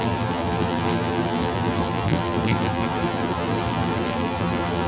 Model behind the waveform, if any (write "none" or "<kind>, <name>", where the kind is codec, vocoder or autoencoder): vocoder, BigVGAN v2